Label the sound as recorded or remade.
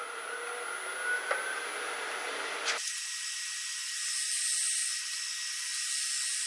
recorded